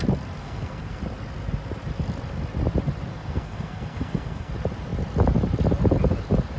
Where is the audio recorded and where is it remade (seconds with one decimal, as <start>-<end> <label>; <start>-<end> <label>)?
0.0-0.4 recorded; 0.4-1.0 remade; 1.0-3.1 recorded; 3.1-4.5 remade; 4.5-6.6 recorded